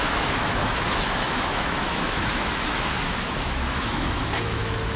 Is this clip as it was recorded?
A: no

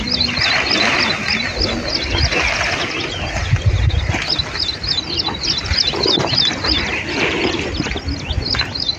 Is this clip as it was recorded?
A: yes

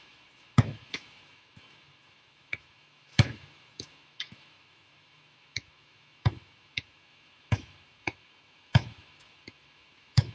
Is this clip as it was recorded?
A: no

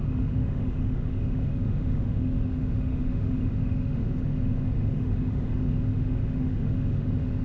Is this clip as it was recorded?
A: no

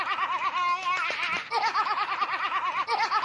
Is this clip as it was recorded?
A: yes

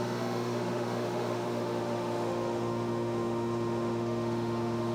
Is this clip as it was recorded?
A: no